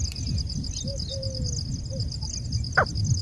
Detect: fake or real real